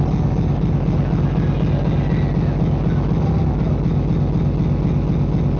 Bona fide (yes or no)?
yes